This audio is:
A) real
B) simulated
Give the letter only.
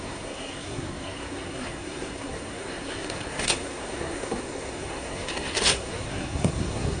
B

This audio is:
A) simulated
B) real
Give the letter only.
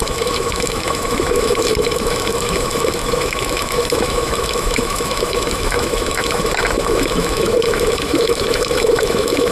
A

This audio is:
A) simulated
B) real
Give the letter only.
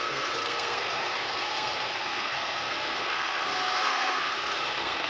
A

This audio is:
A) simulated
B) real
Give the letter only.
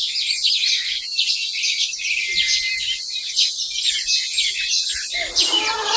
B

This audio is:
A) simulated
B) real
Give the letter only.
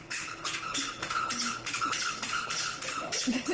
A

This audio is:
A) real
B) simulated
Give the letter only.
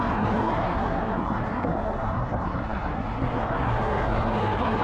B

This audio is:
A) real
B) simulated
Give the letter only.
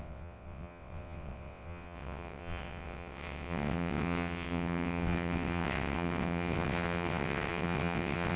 B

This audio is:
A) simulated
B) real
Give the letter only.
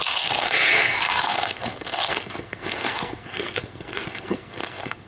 A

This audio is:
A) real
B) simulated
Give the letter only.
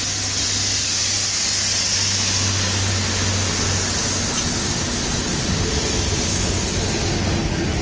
A